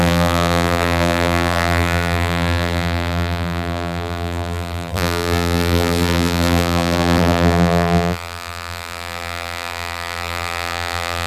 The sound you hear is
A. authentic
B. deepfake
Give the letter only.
B